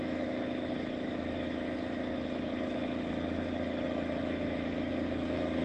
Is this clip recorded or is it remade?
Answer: remade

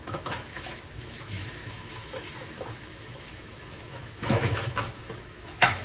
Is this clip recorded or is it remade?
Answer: remade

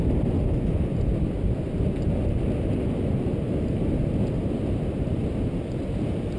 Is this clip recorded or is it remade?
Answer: recorded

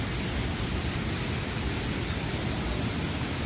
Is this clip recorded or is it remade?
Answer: recorded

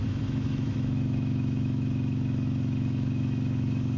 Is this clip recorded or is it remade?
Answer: remade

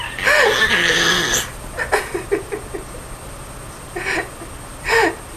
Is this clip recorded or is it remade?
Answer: recorded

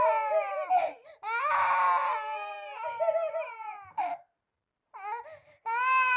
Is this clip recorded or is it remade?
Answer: recorded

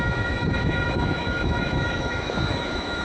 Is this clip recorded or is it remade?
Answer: remade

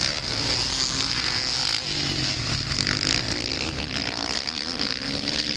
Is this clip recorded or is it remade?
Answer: recorded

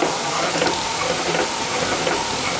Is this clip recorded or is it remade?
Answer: recorded